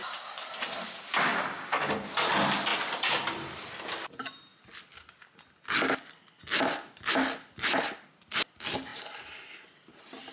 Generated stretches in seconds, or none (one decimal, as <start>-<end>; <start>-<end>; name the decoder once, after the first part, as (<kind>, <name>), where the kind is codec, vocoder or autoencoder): 1.3-2.1 (vocoder, BigVGAN v2); 2.7-3.7; 8.9-9.7